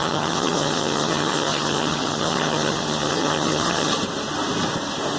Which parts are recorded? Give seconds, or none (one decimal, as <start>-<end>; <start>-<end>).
3.9-5.2